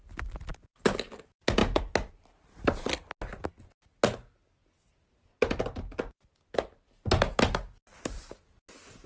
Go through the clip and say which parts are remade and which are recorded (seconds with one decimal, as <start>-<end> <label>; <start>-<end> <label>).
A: 0.0-9.1 recorded